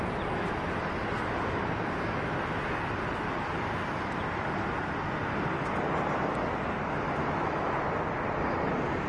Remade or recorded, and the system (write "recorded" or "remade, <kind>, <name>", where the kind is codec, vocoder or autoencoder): recorded